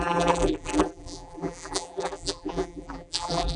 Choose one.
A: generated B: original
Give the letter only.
A